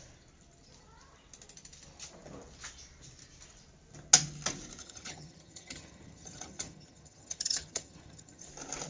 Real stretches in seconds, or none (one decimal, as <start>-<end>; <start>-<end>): 0.0-4.8; 8.5-8.9